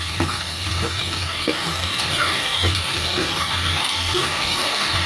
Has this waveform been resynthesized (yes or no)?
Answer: yes